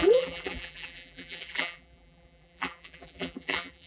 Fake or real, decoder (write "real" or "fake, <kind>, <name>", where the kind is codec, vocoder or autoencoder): fake, vocoder, BigVGAN v2